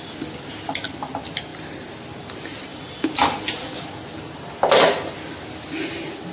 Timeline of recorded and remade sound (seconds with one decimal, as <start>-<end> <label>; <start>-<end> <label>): 0.0-1.5 recorded; 1.5-2.2 remade; 2.2-6.3 recorded